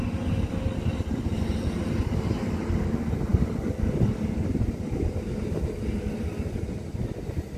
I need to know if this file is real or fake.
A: real